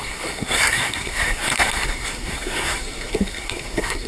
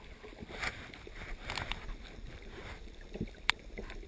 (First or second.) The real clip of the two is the second